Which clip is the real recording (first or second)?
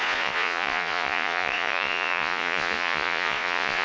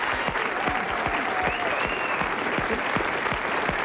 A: second